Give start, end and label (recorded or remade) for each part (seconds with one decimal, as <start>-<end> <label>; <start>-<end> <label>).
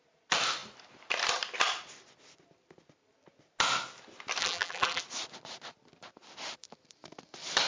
0.0-4.4 recorded; 4.4-5.0 remade; 5.0-7.7 recorded